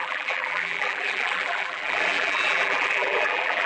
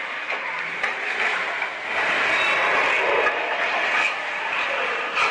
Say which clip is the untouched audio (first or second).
second